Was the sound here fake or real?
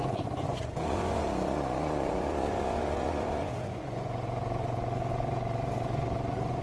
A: fake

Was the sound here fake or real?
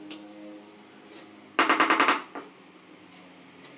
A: real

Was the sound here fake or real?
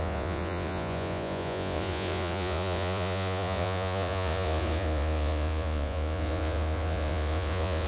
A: fake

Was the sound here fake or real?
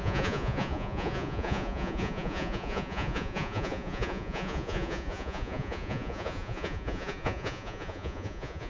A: fake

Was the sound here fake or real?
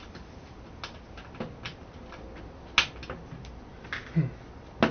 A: real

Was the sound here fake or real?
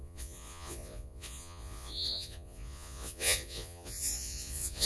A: fake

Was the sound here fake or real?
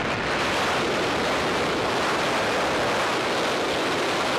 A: real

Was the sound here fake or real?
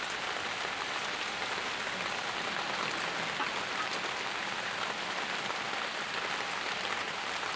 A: real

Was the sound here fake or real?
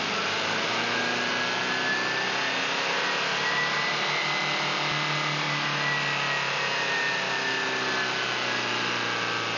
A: real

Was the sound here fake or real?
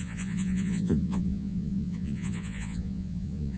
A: fake